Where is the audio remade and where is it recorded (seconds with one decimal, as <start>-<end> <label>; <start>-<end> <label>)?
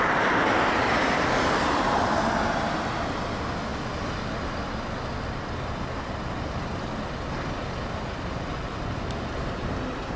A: 0.0-10.2 recorded